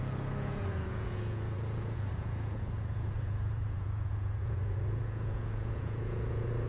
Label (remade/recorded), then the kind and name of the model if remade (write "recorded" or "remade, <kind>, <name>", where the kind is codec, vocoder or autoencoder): remade, vocoder, Vocos